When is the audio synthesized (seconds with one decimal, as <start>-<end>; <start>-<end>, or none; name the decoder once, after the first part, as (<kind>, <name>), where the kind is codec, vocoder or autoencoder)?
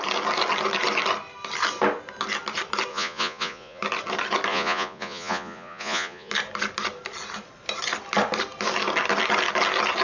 2.9-3.8 (vocoder, Vocos); 4.5-6.3